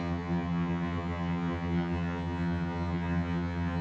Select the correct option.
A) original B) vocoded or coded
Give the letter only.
B